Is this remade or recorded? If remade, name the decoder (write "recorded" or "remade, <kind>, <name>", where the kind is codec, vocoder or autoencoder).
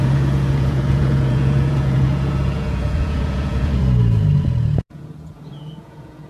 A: remade, vocoder, Vocos